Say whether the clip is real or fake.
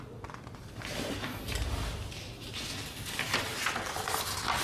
real